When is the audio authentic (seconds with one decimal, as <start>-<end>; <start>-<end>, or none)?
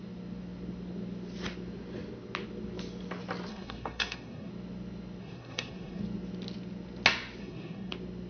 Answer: 0.0-3.5; 4.5-5.2; 6.0-7.4; 7.9-8.3